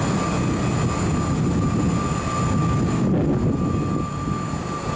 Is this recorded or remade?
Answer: recorded